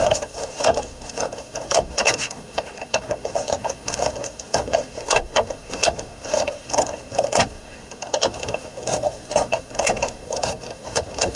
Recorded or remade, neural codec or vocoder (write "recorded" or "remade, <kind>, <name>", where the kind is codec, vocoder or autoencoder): remade, codec, SNAC